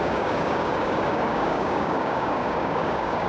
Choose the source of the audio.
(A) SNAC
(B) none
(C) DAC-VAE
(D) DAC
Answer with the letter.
D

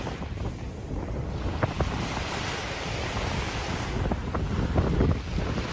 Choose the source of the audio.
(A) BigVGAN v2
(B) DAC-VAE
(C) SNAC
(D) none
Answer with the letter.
D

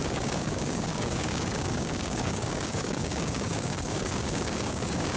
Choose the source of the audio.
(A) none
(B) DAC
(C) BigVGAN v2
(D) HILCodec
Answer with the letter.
B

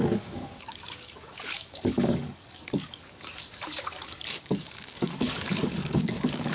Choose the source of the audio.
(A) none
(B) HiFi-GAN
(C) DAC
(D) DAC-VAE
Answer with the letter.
C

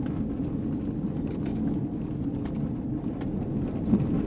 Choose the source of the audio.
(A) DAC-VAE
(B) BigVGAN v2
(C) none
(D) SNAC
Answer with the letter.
C